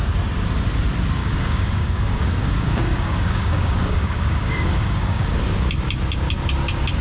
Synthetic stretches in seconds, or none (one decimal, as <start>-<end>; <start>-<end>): 1.2-5.4

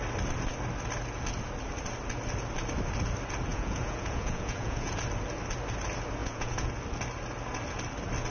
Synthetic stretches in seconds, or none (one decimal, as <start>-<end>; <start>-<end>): 3.5-5.0; 6.2-6.7

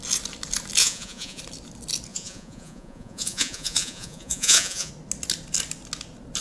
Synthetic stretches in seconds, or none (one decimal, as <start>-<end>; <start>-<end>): 0.8-1.4; 2.1-4.9

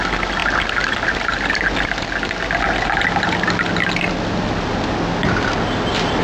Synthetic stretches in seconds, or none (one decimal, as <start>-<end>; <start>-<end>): none